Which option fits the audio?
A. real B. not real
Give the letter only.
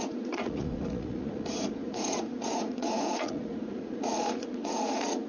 B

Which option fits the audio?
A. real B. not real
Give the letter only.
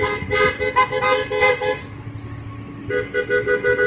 A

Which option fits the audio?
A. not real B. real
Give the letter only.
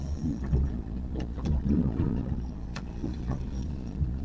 A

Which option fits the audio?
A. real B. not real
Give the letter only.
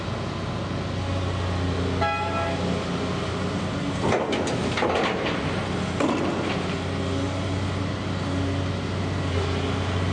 A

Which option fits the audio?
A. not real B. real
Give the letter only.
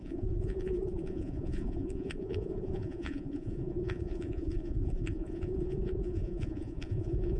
A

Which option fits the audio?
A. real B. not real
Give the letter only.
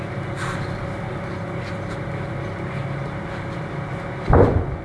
A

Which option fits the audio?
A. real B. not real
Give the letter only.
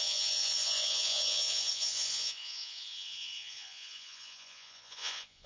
B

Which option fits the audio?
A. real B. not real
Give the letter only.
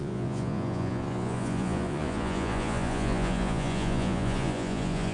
B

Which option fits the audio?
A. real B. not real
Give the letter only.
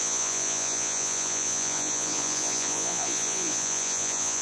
B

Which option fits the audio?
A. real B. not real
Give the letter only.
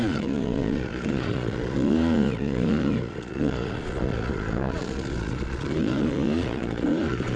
B